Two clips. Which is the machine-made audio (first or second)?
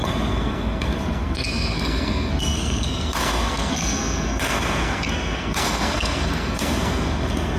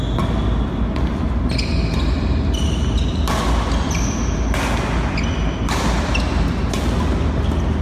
first